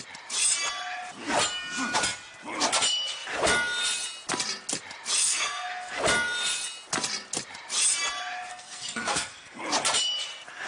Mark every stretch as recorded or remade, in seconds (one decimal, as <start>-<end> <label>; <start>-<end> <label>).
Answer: 0.0-5.2 recorded; 5.2-6.0 remade; 6.0-8.5 recorded; 8.5-9.6 remade; 9.6-10.7 recorded